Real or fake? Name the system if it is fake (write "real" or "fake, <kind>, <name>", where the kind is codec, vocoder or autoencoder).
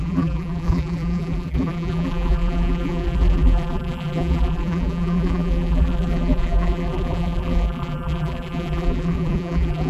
fake, vocoder, BigVGAN v2